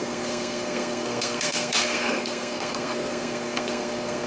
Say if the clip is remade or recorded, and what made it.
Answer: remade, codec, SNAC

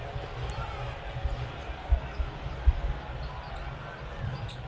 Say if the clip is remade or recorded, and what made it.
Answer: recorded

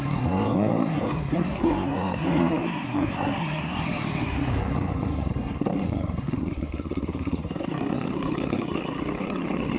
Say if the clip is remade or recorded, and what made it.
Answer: remade, codec, SNAC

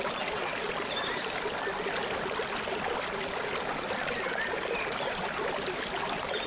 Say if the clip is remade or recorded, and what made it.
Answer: recorded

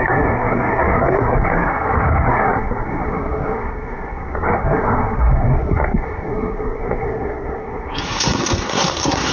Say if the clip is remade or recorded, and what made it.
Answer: remade, codec, SNAC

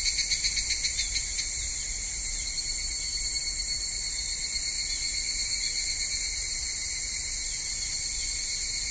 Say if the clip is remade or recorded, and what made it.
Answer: recorded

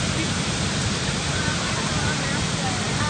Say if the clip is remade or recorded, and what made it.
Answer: recorded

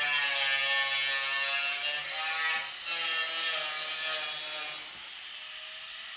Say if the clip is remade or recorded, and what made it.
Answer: recorded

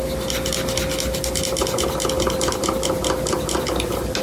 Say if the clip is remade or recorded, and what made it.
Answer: recorded